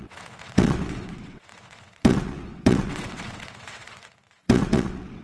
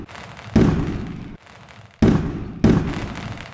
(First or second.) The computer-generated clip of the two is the first